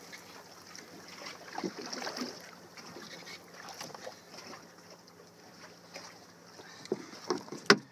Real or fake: real